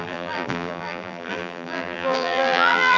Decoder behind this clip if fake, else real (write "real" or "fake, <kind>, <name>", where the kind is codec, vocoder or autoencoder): fake, vocoder, BigVGAN v2